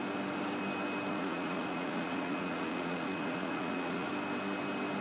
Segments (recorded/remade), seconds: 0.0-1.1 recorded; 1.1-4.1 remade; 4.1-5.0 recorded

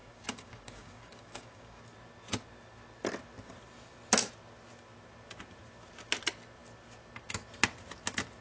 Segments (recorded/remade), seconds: 0.0-1.8 remade; 1.8-8.4 recorded

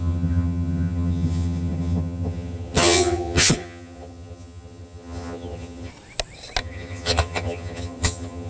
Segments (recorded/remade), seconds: 0.0-5.9 remade; 5.9-6.6 recorded; 6.6-8.5 remade

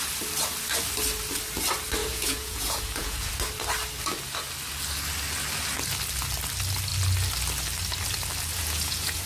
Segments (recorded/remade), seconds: 0.0-2.0 recorded; 2.0-3.3 remade; 3.3-8.5 recorded; 8.5-9.3 remade

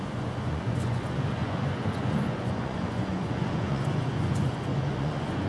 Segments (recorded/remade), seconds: 0.0-5.5 remade

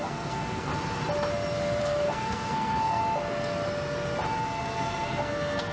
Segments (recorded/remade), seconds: 0.0-0.7 remade; 0.7-1.8 recorded; 1.8-3.0 remade; 3.0-4.6 recorded; 4.6-5.7 remade